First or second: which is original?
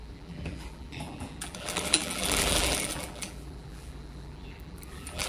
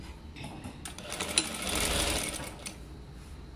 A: second